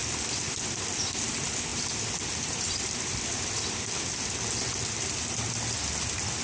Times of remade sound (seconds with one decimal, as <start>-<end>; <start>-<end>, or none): none